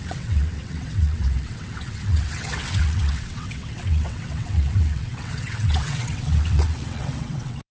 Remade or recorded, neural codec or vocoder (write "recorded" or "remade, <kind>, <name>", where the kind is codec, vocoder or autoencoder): remade, vocoder, WaveNeXt